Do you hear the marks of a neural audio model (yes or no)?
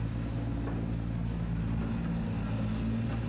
no